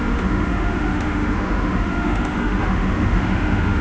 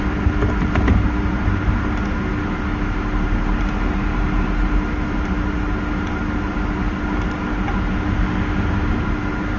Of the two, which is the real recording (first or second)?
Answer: second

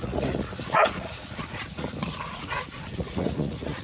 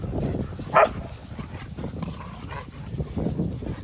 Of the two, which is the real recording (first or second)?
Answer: second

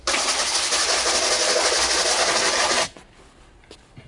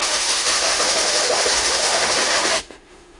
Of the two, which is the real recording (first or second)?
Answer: first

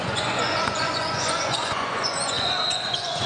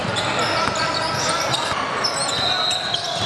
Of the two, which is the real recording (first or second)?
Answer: second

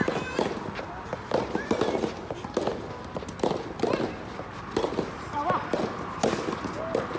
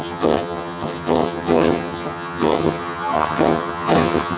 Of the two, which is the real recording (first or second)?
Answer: first